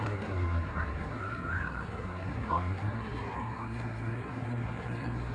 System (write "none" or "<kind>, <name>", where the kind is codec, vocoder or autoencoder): codec, SNAC